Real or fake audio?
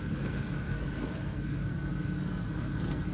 fake